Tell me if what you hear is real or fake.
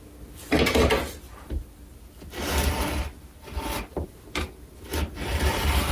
real